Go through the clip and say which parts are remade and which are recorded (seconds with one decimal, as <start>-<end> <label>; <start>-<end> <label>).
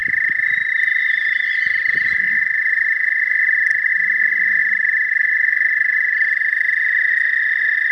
0.0-7.9 recorded